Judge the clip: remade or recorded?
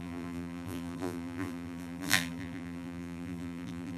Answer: remade